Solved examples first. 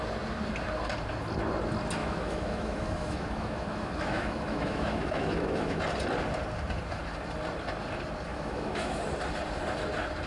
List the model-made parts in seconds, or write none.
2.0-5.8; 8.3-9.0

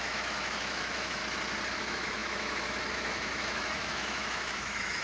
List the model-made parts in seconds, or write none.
0.0-1.2; 1.8-5.0

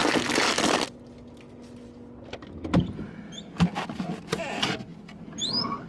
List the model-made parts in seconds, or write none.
none

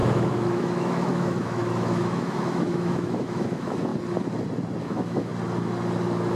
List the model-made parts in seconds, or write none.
0.0-3.9; 4.8-5.3

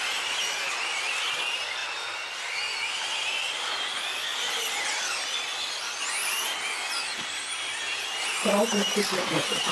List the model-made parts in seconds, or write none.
none